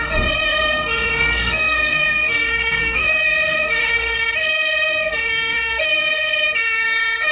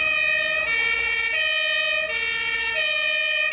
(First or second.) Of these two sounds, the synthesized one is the first